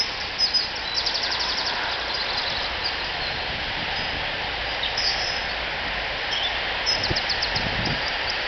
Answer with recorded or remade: recorded